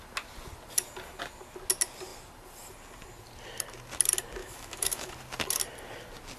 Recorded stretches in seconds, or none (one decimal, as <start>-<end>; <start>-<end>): 0.0-4.4; 5.1-6.4